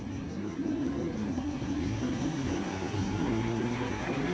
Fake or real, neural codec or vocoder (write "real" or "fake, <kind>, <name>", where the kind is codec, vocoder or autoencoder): fake, codec, SNAC